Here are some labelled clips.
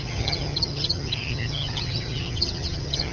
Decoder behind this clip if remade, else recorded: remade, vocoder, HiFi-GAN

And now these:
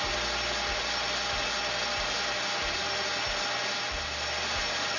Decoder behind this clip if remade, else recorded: recorded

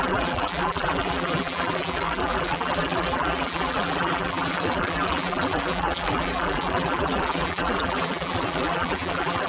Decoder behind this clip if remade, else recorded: remade, vocoder, BigVGAN v2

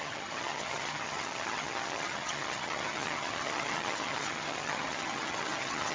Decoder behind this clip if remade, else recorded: remade, vocoder, HiFi-GAN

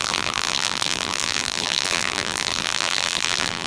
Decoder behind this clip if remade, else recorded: remade, vocoder, BigVGAN v2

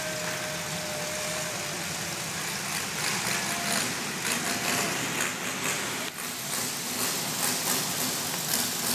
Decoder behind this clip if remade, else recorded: recorded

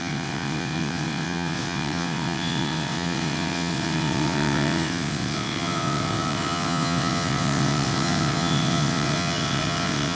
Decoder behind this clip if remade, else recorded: remade, vocoder, WaveNeXt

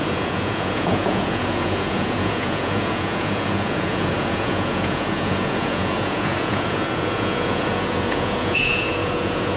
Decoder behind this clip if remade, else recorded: remade, vocoder, Vocos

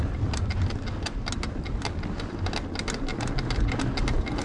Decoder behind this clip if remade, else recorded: recorded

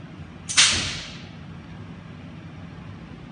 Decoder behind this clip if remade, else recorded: recorded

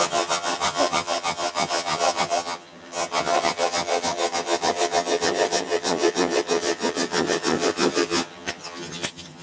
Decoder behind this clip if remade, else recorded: remade, vocoder, HiFi-GAN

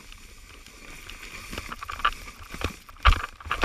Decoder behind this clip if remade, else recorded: recorded